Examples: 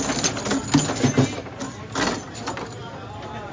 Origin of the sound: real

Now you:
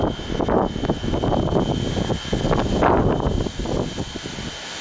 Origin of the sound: real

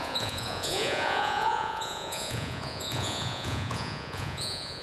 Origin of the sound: fake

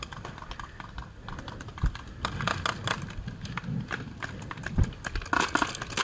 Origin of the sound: real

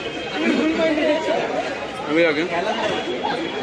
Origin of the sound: real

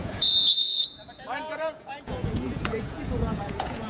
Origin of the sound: fake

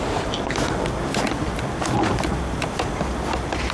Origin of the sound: real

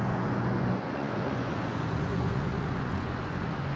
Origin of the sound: fake